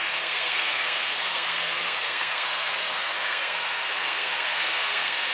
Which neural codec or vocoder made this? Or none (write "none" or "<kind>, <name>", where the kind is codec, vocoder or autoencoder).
codec, SNAC